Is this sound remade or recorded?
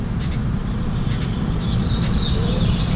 recorded